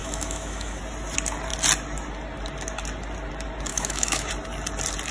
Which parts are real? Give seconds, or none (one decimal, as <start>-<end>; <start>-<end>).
0.8-3.7; 4.3-5.1